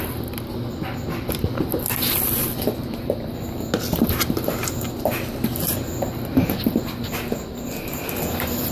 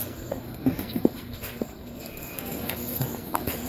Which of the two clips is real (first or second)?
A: first